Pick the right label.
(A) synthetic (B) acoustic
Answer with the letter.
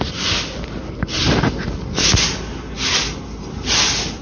B